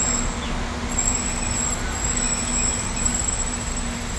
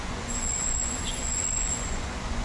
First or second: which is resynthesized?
second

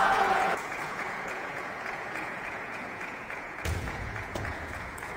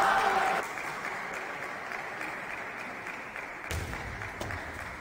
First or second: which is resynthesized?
first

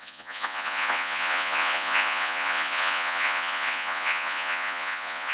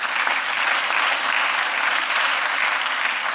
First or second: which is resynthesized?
first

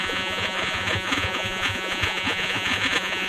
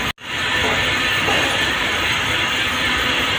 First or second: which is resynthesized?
first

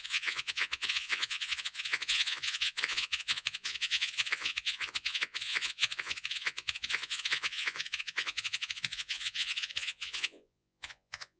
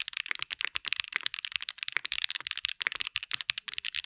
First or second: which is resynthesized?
first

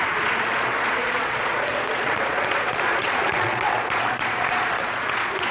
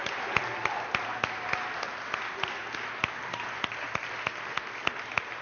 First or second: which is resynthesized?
first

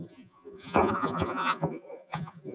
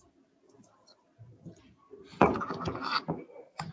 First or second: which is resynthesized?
first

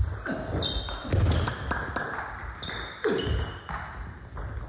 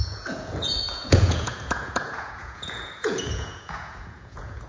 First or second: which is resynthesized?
second